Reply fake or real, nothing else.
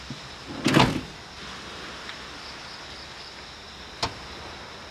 real